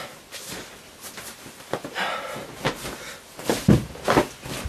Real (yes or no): no